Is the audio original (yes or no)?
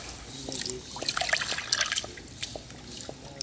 yes